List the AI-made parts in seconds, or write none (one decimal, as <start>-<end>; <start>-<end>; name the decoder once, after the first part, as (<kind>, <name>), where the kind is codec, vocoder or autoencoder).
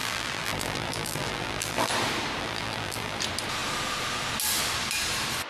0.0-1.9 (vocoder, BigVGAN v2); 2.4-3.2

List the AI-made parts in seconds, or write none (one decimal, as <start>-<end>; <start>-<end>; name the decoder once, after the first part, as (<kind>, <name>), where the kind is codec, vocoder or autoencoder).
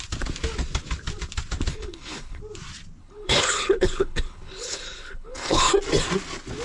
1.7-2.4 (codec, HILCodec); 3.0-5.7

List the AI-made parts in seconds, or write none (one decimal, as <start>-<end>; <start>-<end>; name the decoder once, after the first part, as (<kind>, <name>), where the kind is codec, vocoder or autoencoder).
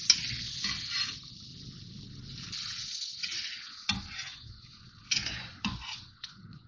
2.7-6.7 (vocoder, Vocos)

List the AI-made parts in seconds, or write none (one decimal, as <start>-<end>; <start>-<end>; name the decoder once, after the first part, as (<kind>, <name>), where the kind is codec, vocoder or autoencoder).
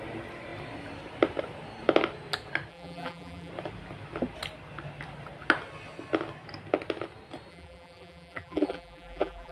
2.7-3.5 (vocoder, BigVGAN v2); 7.5-9.5